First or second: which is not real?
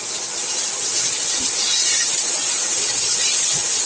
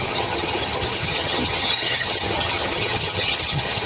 second